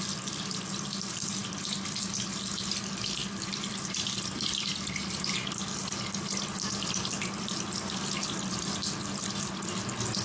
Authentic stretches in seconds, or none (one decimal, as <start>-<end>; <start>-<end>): 0.0-10.2